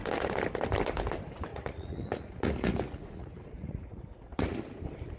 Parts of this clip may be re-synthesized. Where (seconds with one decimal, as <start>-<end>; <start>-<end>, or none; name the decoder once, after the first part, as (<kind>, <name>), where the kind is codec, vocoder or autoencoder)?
1.5-4.6 (vocoder, Vocos)

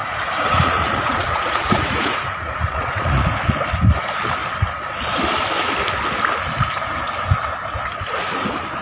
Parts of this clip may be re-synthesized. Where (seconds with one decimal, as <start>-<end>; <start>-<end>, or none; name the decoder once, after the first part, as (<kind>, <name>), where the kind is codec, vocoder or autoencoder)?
0.0-3.2 (vocoder, Vocos)

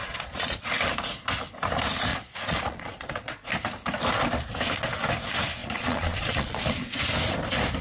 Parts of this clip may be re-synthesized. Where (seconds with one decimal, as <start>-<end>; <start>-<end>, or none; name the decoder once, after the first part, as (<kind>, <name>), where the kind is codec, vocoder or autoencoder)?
0.0-0.7 (vocoder, Vocos); 2.1-3.5; 5.6-7.0

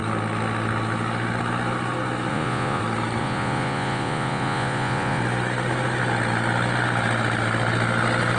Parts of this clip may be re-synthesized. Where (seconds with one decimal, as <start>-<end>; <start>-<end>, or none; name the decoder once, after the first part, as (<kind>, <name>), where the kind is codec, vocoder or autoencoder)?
2.3-2.8 (vocoder, Vocos); 3.2-5.2